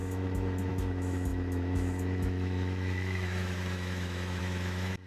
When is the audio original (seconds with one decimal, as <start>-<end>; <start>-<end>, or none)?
none